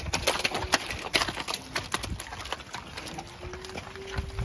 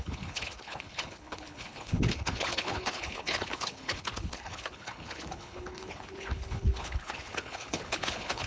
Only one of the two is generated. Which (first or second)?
second